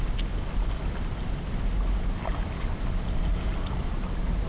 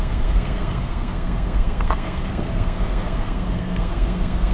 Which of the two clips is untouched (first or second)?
first